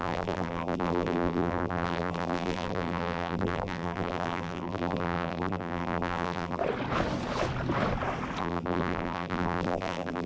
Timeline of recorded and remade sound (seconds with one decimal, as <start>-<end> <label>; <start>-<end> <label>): 0.0-6.6 remade; 6.6-8.4 recorded; 8.4-10.3 remade